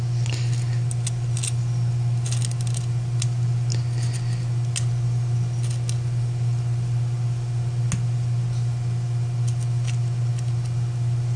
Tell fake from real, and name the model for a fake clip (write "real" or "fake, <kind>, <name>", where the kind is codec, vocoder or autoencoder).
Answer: real